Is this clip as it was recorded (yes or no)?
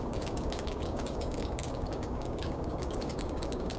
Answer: no